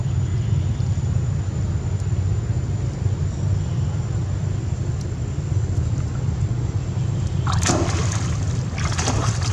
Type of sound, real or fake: real